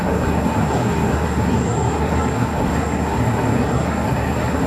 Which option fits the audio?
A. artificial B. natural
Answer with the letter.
A